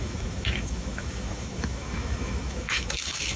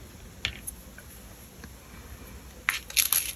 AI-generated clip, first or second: first